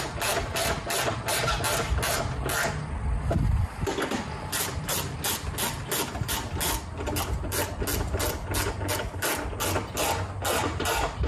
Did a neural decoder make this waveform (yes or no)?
no